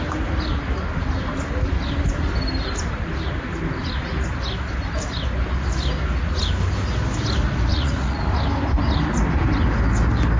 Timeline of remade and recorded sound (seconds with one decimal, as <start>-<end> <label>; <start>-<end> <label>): 0.0-7.7 recorded; 7.7-8.2 remade; 8.2-10.4 recorded